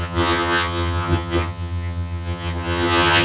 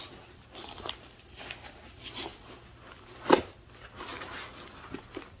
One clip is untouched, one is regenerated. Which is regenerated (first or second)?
first